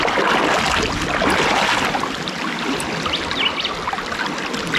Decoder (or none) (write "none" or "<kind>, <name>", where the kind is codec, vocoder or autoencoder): none